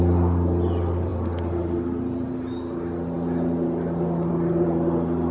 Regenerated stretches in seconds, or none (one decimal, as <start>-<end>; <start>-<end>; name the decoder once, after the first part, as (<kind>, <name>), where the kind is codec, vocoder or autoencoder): none